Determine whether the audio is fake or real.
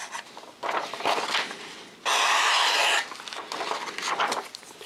real